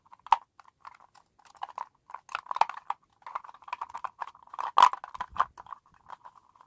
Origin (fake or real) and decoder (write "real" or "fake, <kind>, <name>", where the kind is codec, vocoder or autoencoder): real